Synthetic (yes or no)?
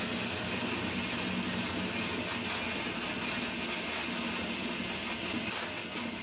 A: no